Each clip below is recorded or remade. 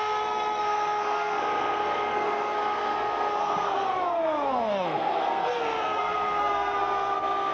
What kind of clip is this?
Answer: remade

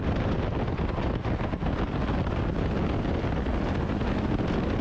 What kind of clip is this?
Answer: recorded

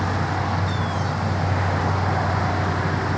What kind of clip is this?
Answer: recorded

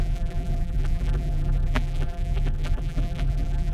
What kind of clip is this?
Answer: remade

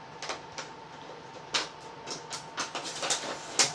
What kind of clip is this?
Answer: recorded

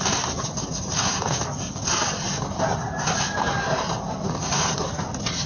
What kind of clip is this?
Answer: recorded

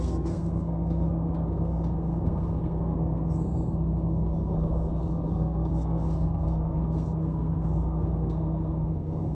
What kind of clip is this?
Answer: remade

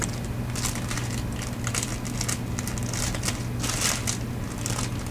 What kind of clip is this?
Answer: recorded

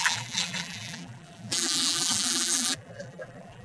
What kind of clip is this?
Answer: remade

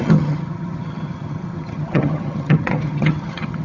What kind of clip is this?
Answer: remade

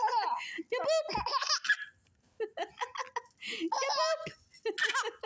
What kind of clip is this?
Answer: recorded